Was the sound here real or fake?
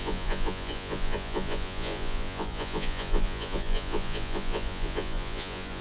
fake